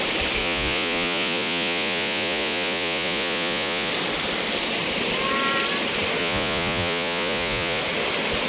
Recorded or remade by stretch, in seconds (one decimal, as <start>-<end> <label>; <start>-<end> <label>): 0.0-0.4 recorded; 0.4-3.9 remade; 3.9-6.2 recorded; 6.2-7.8 remade; 7.8-8.5 recorded